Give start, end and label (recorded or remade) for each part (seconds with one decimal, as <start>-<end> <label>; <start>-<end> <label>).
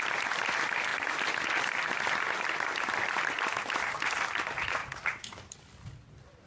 0.0-6.5 recorded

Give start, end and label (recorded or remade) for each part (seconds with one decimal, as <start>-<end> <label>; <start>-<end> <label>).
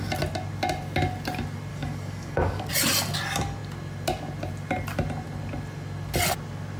0.0-1.7 recorded; 1.7-2.7 remade; 2.7-6.8 recorded